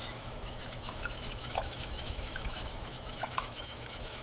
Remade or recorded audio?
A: remade